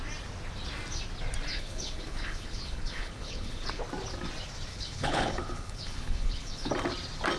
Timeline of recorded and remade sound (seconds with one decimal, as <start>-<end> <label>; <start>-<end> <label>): 0.0-1.5 recorded; 1.5-3.8 remade; 3.8-4.7 recorded; 4.7-6.7 remade; 6.7-7.4 recorded

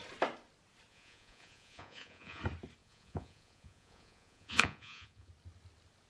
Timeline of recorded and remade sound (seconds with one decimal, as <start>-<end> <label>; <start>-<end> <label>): 0.0-0.9 recorded; 0.9-2.4 remade; 2.4-2.8 recorded; 2.8-5.3 remade; 5.3-6.1 recorded